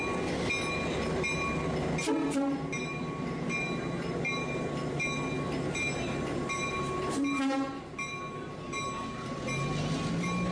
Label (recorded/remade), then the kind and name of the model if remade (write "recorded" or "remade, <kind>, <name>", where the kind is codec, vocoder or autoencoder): recorded